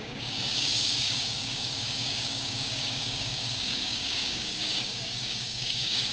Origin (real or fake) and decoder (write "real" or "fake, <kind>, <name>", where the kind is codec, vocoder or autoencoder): fake, codec, DAC